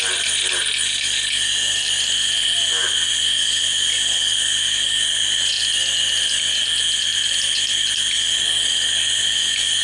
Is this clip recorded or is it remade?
recorded